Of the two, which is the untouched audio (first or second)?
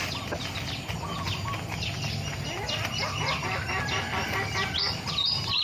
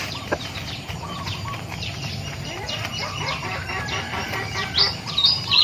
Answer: first